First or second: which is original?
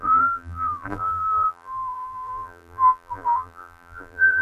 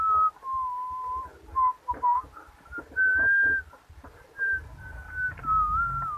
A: second